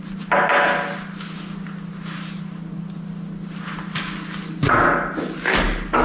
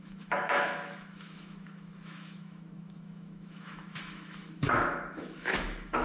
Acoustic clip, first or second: first